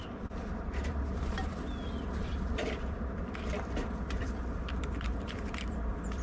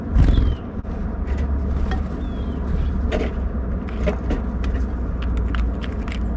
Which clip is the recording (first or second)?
second